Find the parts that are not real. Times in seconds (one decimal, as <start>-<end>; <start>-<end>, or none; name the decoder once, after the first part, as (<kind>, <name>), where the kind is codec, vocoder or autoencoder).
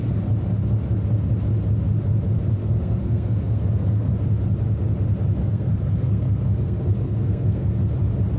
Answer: 2.6-4.1 (codec, SNAC); 5.4-7.8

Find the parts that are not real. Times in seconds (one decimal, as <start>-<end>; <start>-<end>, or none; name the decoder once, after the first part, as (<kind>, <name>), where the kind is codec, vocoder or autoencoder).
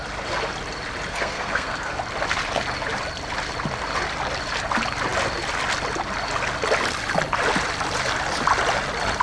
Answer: 1.1-1.9 (codec, SNAC)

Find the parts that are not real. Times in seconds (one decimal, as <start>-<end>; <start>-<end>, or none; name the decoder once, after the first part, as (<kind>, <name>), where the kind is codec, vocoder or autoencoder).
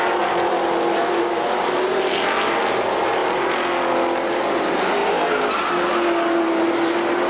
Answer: none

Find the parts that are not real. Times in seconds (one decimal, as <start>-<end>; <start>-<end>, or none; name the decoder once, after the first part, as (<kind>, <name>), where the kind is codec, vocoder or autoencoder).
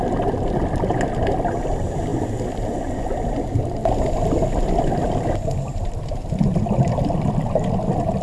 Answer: none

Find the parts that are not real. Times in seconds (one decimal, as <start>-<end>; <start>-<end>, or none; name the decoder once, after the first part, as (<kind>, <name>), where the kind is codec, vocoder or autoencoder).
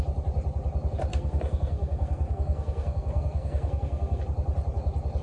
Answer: 1.1-4.2 (codec, SNAC)